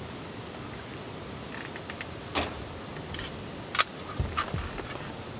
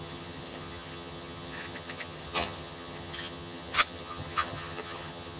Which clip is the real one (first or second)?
first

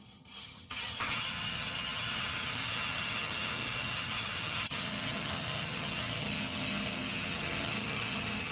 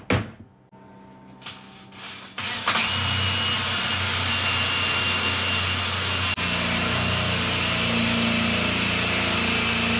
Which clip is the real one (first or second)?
second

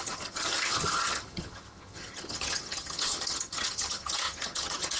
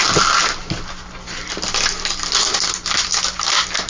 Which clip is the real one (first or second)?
second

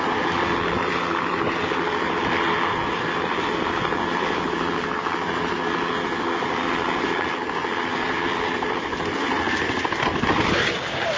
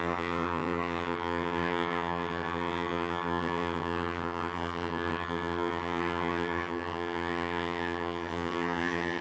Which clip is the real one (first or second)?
first